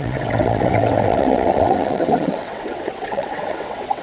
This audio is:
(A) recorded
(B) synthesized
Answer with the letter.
B